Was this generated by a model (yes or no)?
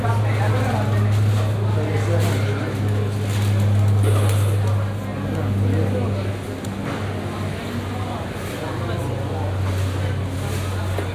no